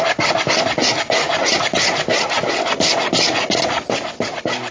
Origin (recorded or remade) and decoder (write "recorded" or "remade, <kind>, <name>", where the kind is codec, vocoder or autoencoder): recorded